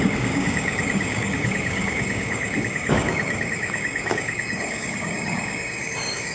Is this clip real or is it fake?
fake